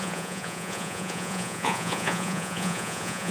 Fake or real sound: fake